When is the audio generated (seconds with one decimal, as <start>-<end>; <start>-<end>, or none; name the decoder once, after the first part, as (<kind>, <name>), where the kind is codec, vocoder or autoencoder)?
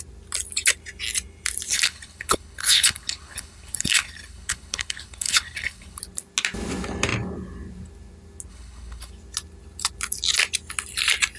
1.7-6.0 (codec, HILCodec); 8.5-9.1